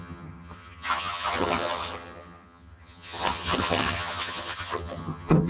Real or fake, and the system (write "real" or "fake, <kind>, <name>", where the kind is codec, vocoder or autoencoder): fake, vocoder, HiFi-GAN